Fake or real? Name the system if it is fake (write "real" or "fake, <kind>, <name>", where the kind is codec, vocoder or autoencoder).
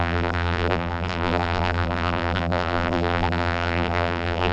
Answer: fake, vocoder, BigVGAN v2